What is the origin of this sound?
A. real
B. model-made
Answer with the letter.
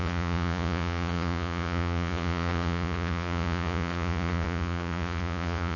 B